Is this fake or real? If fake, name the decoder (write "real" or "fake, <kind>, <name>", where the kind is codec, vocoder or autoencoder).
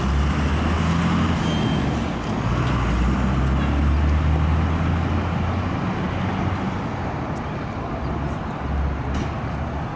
real